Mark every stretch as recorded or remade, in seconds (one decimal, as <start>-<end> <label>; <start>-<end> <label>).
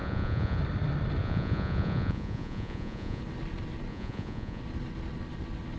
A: 0.0-0.6 remade; 0.6-1.2 recorded; 1.2-3.2 remade; 3.2-3.9 recorded; 3.9-4.6 remade; 4.6-5.8 recorded